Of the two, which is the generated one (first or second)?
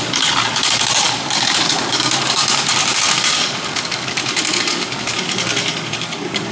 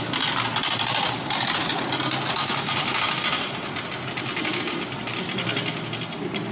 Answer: first